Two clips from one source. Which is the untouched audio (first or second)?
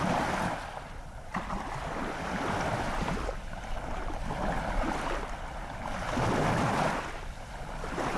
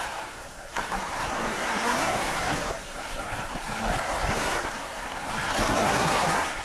first